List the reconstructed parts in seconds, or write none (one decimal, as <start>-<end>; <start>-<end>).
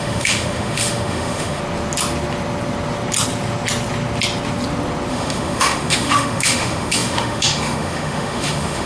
0.0-1.6; 5.1-8.9